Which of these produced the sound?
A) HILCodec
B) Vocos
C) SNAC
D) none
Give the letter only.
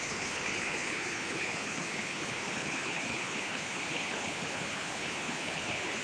A